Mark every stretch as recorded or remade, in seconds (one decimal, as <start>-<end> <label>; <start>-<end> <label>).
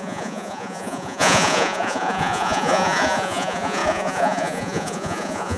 0.0-5.6 remade